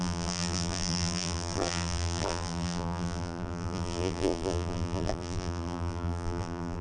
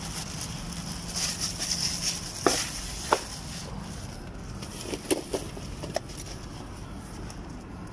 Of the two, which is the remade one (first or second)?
first